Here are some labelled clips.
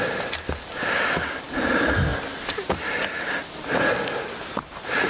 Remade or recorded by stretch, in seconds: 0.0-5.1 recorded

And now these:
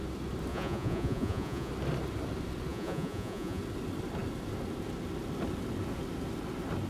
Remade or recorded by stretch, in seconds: 0.0-0.5 recorded; 0.5-1.7 remade; 1.7-2.7 recorded; 2.7-3.6 remade; 3.6-6.9 recorded